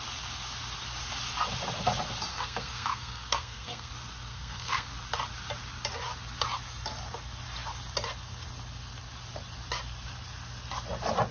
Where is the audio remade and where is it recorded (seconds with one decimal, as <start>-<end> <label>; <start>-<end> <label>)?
0.0-2.3 recorded; 2.3-3.9 remade; 3.9-4.3 recorded; 4.3-4.9 remade; 4.9-11.3 recorded